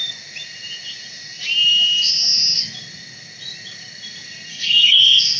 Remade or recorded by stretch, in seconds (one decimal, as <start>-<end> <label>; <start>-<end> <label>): 0.0-4.5 recorded; 4.5-5.4 remade